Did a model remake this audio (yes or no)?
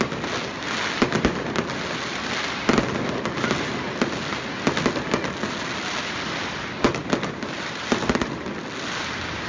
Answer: no